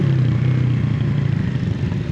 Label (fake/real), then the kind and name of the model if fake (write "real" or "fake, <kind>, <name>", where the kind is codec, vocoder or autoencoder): real